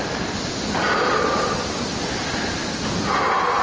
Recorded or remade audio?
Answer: recorded